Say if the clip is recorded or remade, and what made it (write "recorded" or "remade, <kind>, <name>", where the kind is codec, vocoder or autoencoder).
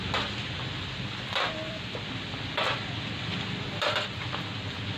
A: recorded